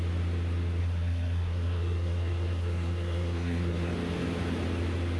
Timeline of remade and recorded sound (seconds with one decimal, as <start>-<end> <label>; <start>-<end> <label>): 0.0-0.8 recorded; 0.8-3.9 remade; 3.9-5.2 recorded